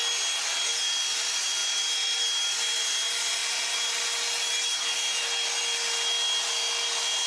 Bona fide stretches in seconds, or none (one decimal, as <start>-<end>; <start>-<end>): 0.0-7.3

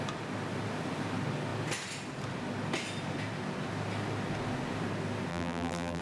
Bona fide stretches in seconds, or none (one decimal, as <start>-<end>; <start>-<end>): 0.0-5.3

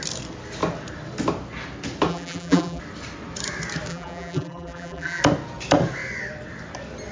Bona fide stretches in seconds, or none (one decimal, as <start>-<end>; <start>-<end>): 0.0-2.1; 2.8-3.9; 5.2-7.1